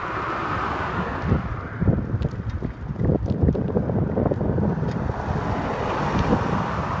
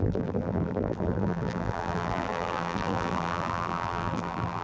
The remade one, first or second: second